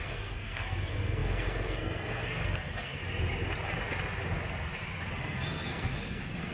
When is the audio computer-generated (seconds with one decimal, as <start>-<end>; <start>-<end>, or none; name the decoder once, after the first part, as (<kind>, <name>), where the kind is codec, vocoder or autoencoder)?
0.0-3.0 (codec, SNAC); 5.2-6.5